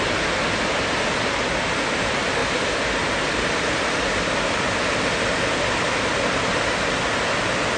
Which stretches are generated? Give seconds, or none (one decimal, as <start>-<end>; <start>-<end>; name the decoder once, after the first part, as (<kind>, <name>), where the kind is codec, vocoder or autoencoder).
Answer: none